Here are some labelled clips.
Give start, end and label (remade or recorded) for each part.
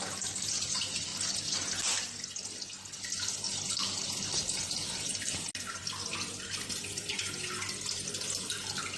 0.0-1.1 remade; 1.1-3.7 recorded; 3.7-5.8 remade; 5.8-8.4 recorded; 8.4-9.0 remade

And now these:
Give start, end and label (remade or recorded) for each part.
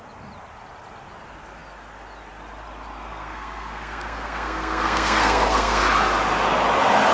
0.0-3.1 recorded; 3.1-5.8 remade; 5.8-7.1 recorded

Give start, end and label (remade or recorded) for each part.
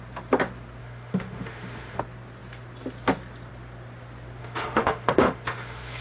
0.0-0.8 recorded; 0.8-2.0 remade; 2.0-4.4 recorded; 4.4-6.0 remade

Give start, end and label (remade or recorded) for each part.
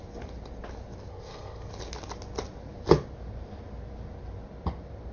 0.0-1.1 recorded; 1.1-1.7 remade; 1.7-5.1 recorded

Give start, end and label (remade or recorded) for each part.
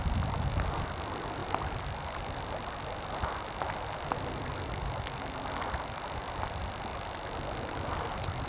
0.0-1.4 remade; 1.4-4.3 recorded; 4.3-6.9 remade; 6.9-8.1 recorded; 8.1-8.5 remade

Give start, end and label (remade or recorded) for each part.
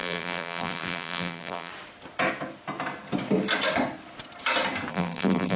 0.0-1.7 remade; 1.7-4.9 recorded; 4.9-5.6 remade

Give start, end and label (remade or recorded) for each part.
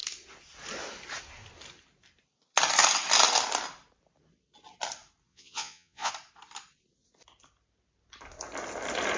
0.0-5.3 recorded; 5.3-6.1 remade; 6.1-9.2 recorded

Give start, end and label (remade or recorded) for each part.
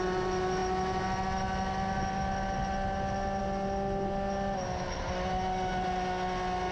0.0-6.7 recorded